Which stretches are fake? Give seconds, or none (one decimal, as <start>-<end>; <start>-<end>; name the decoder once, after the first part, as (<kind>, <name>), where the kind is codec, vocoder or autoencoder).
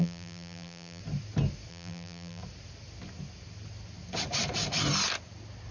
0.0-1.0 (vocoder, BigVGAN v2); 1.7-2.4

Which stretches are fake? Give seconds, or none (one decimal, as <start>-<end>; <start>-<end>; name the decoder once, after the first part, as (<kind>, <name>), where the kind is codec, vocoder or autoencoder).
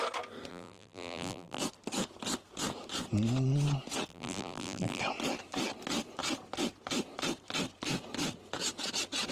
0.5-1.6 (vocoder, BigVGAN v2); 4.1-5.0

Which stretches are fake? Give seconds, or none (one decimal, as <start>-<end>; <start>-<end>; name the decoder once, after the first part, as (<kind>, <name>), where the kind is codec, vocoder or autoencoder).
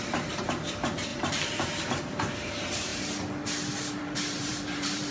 0.0-2.9 (vocoder, BigVGAN v2); 3.9-5.1